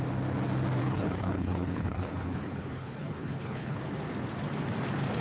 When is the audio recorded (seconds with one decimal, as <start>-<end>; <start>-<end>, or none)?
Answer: 0.0-0.8; 3.8-5.2